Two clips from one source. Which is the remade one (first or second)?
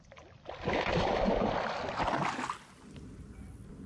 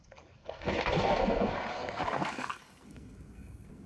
second